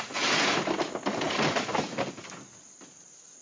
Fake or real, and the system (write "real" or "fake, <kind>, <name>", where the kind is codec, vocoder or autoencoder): real